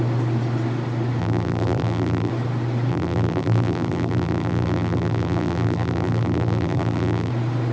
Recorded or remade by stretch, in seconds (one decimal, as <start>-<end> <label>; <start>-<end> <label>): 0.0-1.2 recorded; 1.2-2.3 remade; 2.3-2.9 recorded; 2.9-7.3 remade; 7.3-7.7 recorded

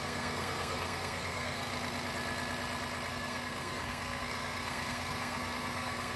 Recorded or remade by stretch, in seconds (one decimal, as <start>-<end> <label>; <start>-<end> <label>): 0.0-1.7 remade; 1.7-3.1 recorded; 3.1-6.2 remade

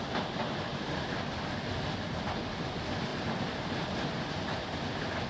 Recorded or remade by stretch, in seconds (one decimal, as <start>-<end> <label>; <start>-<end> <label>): 0.0-0.7 recorded; 0.7-1.2 remade; 1.2-3.1 recorded; 3.1-3.6 remade; 3.6-5.3 recorded